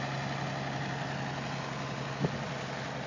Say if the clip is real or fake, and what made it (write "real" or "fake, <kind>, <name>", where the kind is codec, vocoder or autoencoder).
real